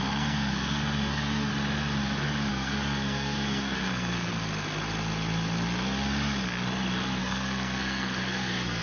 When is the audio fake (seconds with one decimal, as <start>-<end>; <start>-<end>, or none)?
0.0-1.5; 2.5-4.3; 7.2-8.8